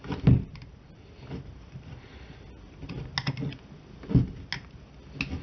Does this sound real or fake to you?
real